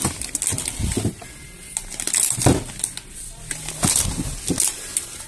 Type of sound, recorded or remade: recorded